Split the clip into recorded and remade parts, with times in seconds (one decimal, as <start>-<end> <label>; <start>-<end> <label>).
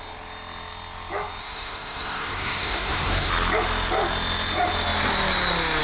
0.0-1.4 recorded; 1.4-3.3 remade; 3.3-5.8 recorded